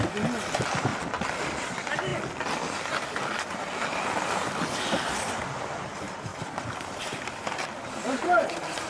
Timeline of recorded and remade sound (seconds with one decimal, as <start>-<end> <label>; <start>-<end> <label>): 0.0-6.3 recorded; 6.3-8.5 remade; 8.5-8.9 recorded